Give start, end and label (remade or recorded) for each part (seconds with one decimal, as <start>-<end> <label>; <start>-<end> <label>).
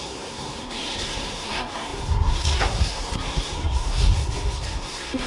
0.0-5.3 remade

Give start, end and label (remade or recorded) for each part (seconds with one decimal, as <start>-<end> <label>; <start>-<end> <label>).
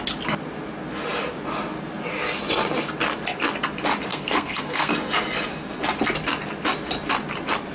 0.0-4.1 recorded; 4.1-4.9 remade; 4.9-7.7 recorded